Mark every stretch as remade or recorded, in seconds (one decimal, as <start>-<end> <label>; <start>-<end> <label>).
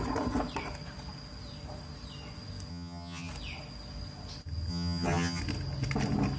0.0-2.7 recorded; 2.7-3.3 remade; 3.3-4.7 recorded; 4.7-5.4 remade; 5.4-6.4 recorded